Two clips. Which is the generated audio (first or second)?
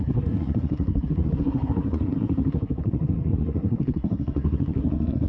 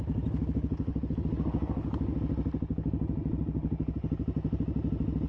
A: first